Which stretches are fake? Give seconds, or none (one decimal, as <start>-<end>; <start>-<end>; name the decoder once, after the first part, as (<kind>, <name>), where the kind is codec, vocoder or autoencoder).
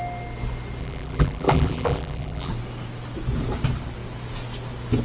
0.8-2.5 (vocoder, BigVGAN v2)